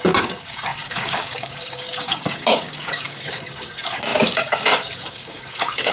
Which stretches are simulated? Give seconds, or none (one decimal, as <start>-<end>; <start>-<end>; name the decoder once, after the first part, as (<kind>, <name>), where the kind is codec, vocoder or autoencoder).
0.0-5.9 (codec, DAC)